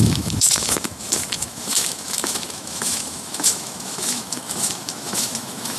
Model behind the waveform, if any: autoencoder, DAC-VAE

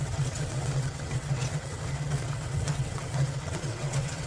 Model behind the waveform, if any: vocoder, WaveNeXt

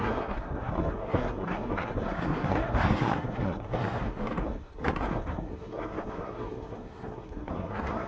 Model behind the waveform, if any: codec, SNAC